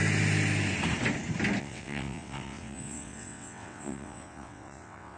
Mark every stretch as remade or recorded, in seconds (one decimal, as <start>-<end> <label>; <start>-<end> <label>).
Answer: 0.0-1.6 recorded; 1.6-5.2 remade